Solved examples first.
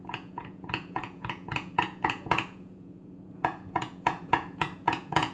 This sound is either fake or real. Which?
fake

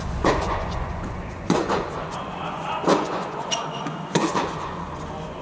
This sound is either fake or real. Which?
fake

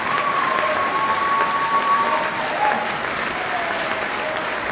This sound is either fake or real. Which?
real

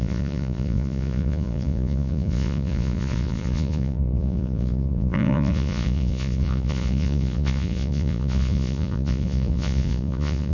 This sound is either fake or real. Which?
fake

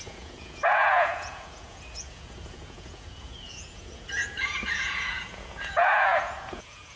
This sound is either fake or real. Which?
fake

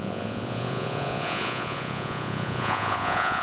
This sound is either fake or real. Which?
fake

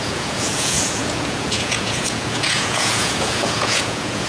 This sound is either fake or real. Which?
fake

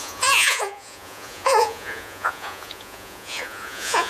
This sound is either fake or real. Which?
fake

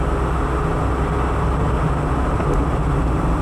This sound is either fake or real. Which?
real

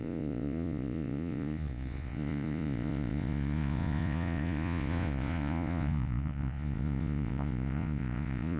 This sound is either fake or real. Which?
fake